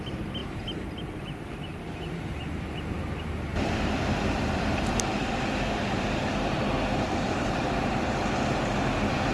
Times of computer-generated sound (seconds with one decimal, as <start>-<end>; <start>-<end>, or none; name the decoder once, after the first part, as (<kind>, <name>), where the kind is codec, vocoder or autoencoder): 0.4-1.2 (vocoder, BigVGAN v2); 3.5-8.3